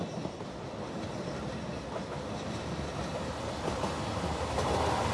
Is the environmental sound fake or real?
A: real